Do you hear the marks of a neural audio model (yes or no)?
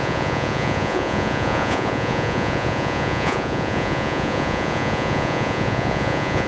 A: yes